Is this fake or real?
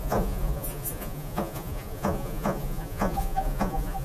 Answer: fake